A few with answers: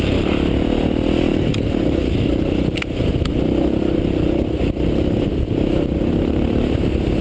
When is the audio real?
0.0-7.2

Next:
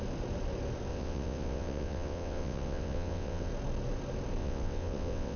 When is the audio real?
0.0-0.9; 3.5-4.4